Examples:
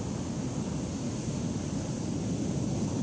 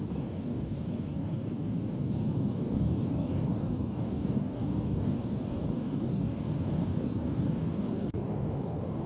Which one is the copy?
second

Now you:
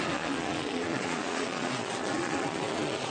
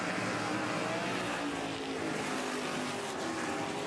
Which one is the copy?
first